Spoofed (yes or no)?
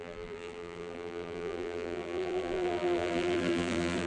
yes